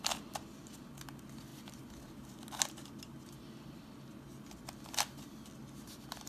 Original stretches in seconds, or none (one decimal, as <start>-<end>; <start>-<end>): 0.0-6.3